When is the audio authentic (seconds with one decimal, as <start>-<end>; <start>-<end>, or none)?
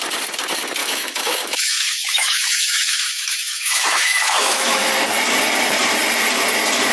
0.0-0.8; 4.9-6.9